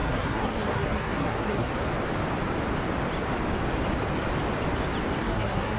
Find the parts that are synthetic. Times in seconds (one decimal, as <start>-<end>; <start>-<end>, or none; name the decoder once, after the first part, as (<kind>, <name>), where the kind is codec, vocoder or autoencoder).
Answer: 0.0-1.7 (codec, SNAC); 5.2-5.8